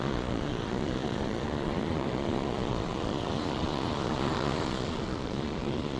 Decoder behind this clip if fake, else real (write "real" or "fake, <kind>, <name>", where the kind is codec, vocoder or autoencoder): fake, vocoder, Vocos